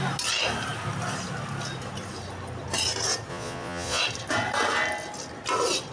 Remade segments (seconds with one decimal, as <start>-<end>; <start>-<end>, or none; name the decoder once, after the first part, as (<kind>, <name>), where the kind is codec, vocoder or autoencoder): 3.3-4.0 (vocoder, Vocos)